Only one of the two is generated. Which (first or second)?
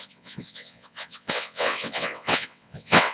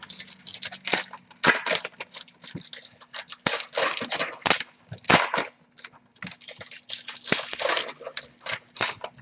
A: first